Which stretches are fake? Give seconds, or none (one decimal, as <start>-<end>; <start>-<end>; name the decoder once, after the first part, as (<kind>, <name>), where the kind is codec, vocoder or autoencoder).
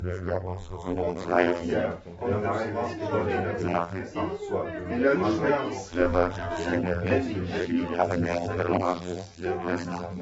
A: 0.0-1.7 (vocoder, BigVGAN v2); 3.6-4.0; 5.9-7.1; 7.6-10.2